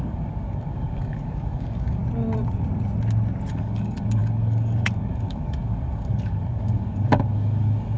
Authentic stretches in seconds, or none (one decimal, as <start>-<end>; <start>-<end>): 2.0-3.5